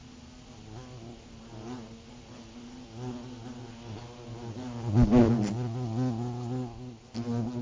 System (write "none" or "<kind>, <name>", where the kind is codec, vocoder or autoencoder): none